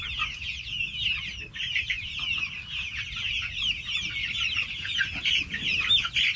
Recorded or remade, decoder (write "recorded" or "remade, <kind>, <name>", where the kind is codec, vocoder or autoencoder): recorded